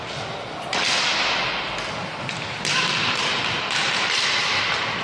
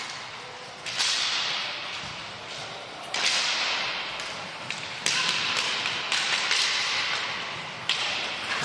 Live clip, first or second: first